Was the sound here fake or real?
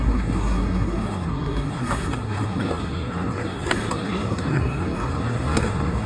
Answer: fake